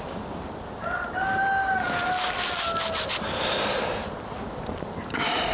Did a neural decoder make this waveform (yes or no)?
no